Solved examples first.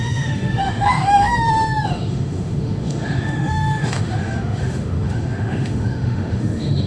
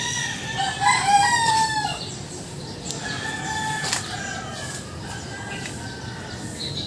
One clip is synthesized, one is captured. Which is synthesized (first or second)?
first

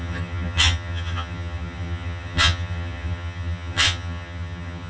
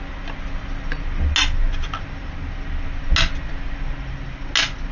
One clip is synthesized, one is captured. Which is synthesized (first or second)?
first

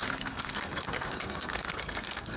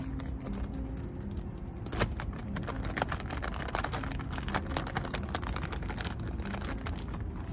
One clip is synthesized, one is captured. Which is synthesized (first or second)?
first